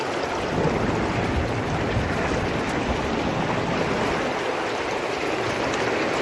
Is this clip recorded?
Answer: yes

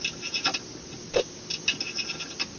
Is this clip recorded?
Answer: yes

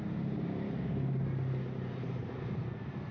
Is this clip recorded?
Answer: yes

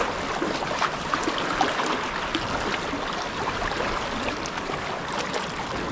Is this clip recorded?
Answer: yes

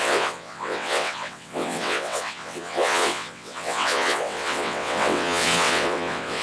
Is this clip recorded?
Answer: no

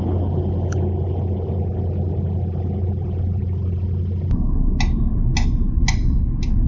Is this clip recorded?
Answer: yes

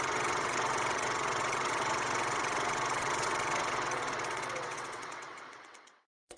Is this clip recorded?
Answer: no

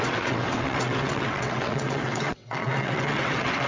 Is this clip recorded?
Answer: no